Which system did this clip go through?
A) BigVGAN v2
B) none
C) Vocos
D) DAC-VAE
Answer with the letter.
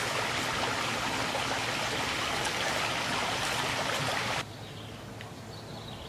B